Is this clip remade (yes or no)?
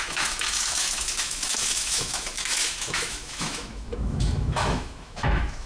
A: yes